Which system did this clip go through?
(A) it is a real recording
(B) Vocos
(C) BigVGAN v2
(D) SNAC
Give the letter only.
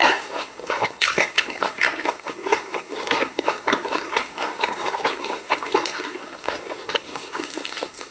D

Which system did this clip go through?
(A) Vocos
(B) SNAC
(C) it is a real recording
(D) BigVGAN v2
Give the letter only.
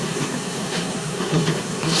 B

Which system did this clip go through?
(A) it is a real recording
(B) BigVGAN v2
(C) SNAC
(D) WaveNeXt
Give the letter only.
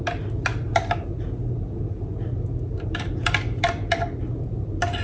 A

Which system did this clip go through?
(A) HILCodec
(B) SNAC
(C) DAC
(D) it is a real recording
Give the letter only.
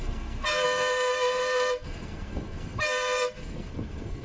B